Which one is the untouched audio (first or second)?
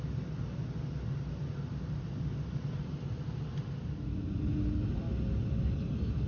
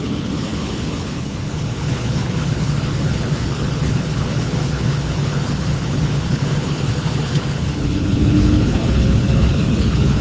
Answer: first